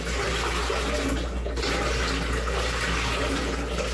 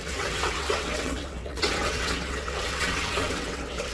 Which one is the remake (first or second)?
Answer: second